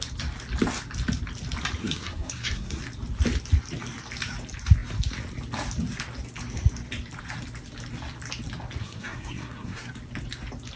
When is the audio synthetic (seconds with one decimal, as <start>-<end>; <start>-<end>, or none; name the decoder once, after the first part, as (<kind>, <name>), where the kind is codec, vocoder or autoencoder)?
1.8-2.8 (codec, SNAC); 8.8-9.9